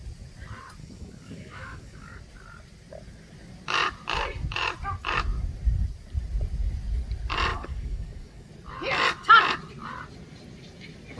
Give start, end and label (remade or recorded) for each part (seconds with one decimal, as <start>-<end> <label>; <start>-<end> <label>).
0.0-0.8 recorded; 0.8-2.2 remade; 2.2-7.5 recorded; 7.5-8.5 remade; 8.5-11.2 recorded

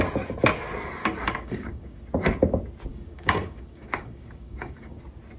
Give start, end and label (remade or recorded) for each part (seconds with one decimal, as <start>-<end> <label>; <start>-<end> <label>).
0.0-1.0 recorded; 1.0-2.0 remade; 2.0-2.9 recorded; 2.9-5.0 remade; 5.0-5.4 recorded

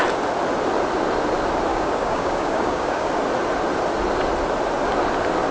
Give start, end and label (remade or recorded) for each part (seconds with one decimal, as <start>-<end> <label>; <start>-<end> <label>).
0.0-1.7 recorded; 1.7-3.1 remade; 3.1-5.5 recorded